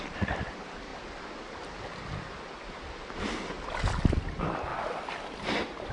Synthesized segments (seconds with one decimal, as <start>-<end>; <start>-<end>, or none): 0.0-0.9; 2.1-5.9